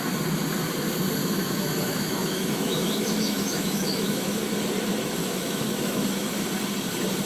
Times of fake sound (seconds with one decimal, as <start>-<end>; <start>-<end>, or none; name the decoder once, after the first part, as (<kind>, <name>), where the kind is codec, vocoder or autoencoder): 1.2-4.4 (autoencoder, DAC-VAE); 5.2-6.4